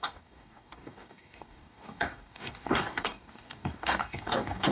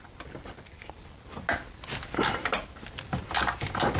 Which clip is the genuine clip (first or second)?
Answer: second